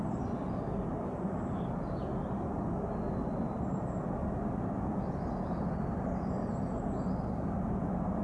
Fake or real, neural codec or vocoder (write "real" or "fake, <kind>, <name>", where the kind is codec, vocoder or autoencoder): real